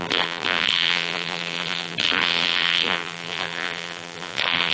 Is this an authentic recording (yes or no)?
no